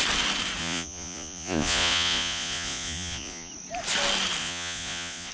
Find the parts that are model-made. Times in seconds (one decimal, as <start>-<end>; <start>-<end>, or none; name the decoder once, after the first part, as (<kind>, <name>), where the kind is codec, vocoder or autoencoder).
0.6-3.5 (vocoder, Vocos); 4.4-5.3